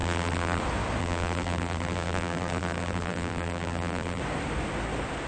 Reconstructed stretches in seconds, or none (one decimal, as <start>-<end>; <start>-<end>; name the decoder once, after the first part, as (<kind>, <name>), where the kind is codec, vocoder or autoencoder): 0.0-0.6 (vocoder, BigVGAN v2); 1.0-4.2